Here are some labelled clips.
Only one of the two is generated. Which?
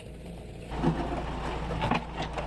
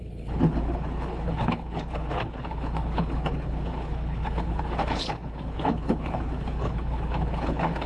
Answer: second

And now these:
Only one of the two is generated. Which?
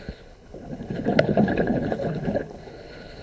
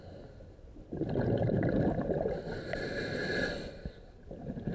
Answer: first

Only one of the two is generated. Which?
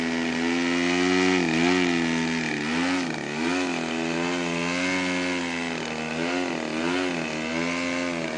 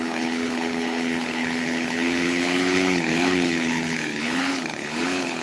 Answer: second